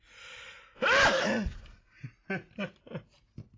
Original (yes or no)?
yes